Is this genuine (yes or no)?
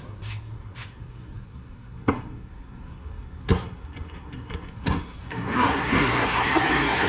no